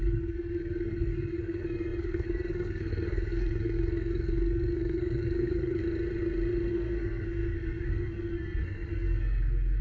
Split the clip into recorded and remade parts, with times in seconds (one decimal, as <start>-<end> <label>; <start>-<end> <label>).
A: 0.0-5.8 remade; 5.8-6.7 recorded; 6.7-9.8 remade